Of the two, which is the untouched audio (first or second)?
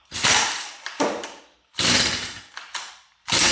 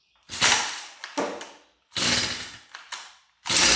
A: second